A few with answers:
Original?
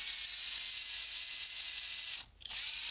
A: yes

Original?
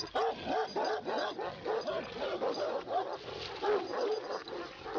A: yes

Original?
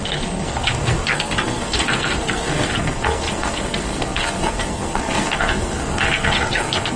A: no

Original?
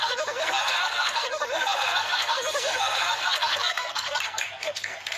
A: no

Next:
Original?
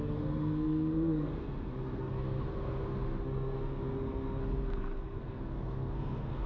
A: no